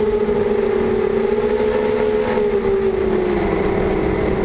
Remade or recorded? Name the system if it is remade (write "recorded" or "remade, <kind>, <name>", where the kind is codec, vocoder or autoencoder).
recorded